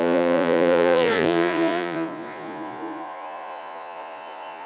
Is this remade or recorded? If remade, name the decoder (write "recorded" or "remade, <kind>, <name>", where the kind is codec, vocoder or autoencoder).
remade, vocoder, Vocos